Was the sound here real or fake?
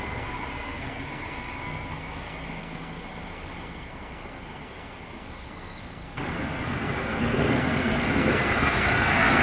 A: fake